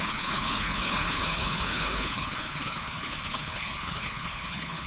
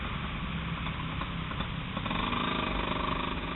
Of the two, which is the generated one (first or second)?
first